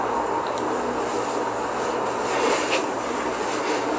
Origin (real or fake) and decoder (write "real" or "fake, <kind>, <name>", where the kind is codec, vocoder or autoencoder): real